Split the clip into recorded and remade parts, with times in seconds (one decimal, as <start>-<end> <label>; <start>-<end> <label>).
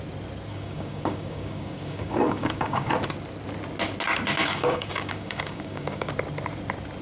0.0-0.5 recorded; 0.5-2.9 remade; 2.9-4.4 recorded; 4.4-6.1 remade; 6.1-7.0 recorded